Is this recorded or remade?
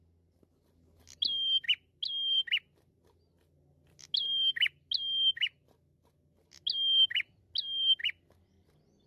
recorded